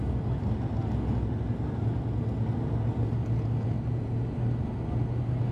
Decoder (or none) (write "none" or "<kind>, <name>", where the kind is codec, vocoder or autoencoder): none